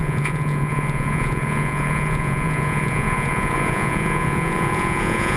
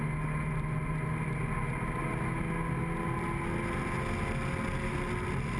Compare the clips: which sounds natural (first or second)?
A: second